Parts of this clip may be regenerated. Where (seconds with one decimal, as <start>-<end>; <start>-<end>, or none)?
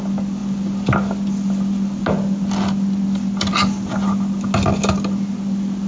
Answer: none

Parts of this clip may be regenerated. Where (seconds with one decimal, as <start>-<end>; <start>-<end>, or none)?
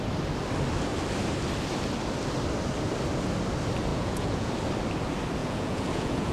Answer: 3.9-4.5; 5.4-6.3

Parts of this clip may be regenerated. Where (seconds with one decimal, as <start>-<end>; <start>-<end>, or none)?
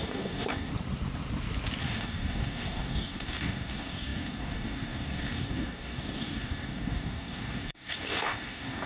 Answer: 0.0-0.7; 1.8-8.9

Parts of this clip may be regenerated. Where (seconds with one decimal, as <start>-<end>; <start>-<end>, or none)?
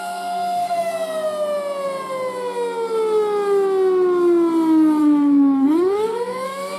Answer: 0.0-0.9; 5.0-6.8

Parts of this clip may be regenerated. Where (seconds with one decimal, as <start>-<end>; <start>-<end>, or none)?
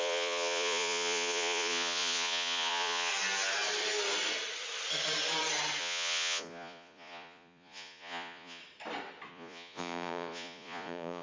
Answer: 0.0-3.1; 5.8-8.6; 9.3-11.2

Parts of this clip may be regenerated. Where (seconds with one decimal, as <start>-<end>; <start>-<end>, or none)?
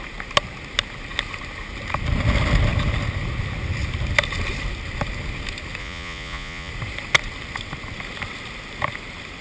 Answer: 5.8-6.7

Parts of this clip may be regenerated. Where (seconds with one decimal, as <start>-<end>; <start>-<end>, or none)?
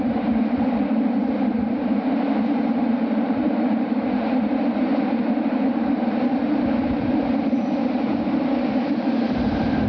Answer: 0.0-9.9